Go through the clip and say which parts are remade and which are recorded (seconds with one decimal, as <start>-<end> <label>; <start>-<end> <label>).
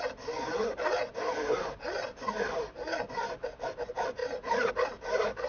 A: 0.0-4.2 recorded; 4.2-4.7 remade; 4.7-5.5 recorded